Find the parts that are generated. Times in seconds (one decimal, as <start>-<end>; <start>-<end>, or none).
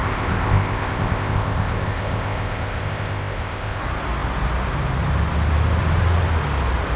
0.0-3.8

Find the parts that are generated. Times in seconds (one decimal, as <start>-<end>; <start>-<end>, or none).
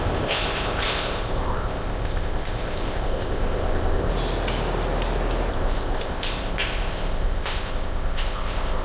0.0-4.1; 5.5-8.8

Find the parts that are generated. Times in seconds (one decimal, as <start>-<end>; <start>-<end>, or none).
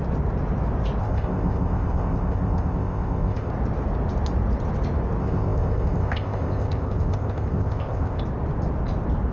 1.0-3.5; 5.2-8.2